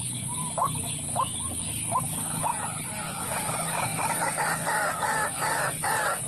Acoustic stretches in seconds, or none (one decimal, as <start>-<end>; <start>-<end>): 2.5-3.2